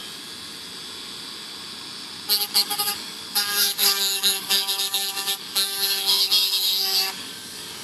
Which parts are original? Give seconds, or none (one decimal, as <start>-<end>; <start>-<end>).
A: 0.0-2.4